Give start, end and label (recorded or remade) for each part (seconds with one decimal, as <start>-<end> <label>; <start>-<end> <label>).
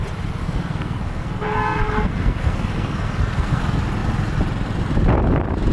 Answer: 0.0-0.4 recorded; 0.4-3.6 remade; 3.6-5.7 recorded